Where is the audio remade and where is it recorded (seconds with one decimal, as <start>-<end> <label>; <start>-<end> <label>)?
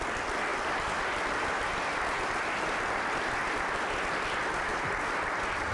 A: 0.0-5.7 recorded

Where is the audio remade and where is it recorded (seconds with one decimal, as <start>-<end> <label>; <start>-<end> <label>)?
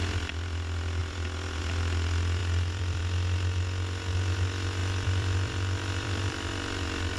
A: 0.0-2.4 recorded; 2.4-3.0 remade; 3.0-4.8 recorded; 4.8-6.5 remade; 6.5-7.2 recorded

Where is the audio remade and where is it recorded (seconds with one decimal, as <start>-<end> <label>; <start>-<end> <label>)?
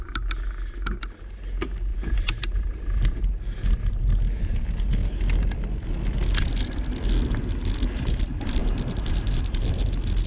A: 0.0-1.9 recorded; 1.9-3.2 remade; 3.2-8.6 recorded; 8.6-9.9 remade; 9.9-10.3 recorded